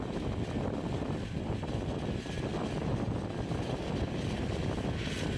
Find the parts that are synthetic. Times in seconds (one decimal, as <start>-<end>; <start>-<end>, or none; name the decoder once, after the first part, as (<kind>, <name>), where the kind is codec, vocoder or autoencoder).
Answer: none